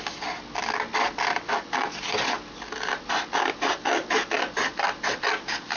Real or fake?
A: real